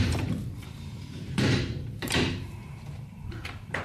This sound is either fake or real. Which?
fake